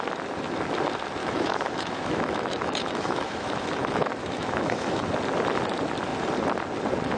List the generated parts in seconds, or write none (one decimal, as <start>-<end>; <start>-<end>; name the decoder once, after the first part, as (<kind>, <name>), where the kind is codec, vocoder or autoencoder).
1.2-5.0 (autoencoder, DAC-VAE)